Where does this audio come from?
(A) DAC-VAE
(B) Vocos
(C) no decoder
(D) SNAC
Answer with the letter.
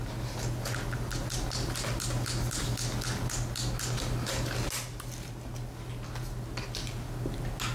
C